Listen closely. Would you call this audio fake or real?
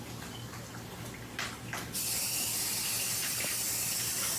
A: real